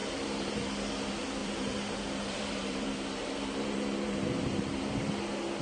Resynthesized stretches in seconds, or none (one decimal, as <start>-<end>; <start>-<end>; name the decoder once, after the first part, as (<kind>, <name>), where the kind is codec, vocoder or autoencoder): 0.0-0.5 (vocoder, BigVGAN v2); 1.4-4.8